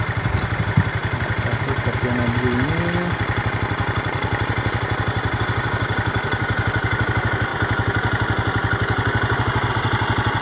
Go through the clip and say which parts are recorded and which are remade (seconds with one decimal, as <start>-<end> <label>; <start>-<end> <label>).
0.0-10.4 recorded